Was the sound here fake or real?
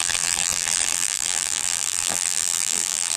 fake